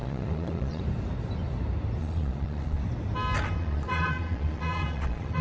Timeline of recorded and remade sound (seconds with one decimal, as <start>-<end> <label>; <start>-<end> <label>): 0.0-0.8 remade; 0.8-2.0 recorded; 2.0-2.8 remade; 2.8-3.6 recorded; 3.6-5.4 remade